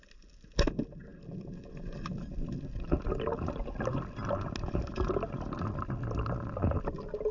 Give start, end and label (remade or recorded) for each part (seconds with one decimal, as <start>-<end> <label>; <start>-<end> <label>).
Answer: 0.0-7.3 recorded